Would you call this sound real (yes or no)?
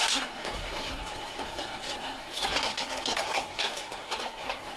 no